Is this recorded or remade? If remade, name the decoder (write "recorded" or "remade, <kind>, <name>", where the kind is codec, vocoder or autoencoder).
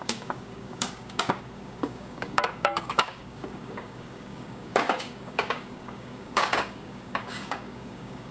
remade, codec, DAC